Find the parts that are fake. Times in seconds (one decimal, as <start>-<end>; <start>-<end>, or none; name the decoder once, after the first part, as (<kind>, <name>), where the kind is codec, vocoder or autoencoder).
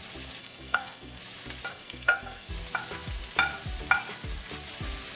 0.4-1.2 (codec, SNAC); 1.7-2.5